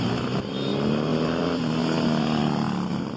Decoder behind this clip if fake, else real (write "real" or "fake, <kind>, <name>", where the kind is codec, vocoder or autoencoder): real